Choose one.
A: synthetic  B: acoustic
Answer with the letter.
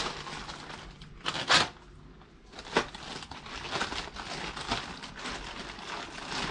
B